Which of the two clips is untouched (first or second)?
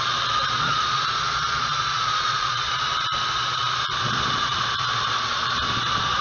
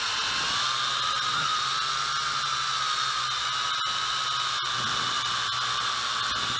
second